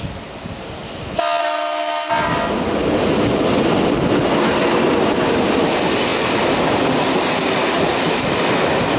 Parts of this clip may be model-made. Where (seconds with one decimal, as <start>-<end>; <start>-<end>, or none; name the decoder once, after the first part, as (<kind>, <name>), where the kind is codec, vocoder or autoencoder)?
1.4-2.1 (codec, SNAC)